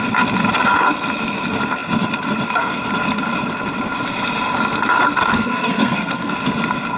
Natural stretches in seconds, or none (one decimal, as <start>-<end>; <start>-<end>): 0.0-5.2; 6.3-7.0